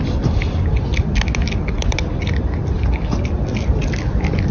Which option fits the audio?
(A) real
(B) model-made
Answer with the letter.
A